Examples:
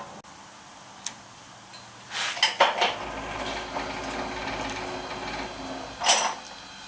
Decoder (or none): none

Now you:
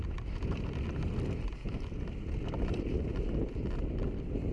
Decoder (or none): none